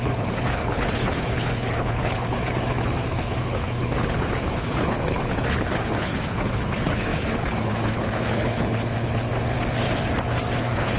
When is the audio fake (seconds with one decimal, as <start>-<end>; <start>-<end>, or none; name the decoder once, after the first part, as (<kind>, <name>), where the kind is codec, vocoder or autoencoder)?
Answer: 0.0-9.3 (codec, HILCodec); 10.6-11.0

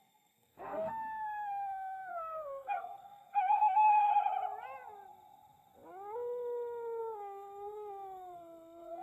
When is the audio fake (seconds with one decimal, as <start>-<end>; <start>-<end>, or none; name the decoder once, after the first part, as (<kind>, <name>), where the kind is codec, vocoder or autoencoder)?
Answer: 0.0-4.1 (codec, SNAC); 7.0-9.0

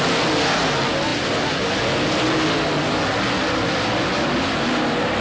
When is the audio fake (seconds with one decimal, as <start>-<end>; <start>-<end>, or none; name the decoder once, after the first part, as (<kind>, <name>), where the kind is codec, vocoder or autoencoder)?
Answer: 1.1-1.8 (vocoder, BigVGAN v2)